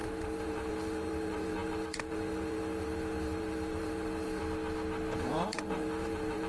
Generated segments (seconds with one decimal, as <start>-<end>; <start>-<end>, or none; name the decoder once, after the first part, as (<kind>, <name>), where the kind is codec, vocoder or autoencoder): 0.0-4.4 (vocoder, BigVGAN v2); 5.2-6.5